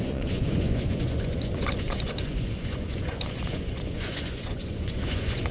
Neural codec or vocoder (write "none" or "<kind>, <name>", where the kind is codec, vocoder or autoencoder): vocoder, Vocos